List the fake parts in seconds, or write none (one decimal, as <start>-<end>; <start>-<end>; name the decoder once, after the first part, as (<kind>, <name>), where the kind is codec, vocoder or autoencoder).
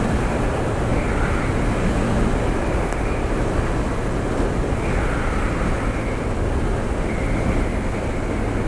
none